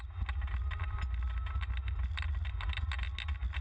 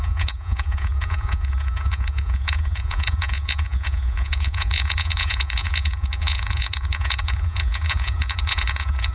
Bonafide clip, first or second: first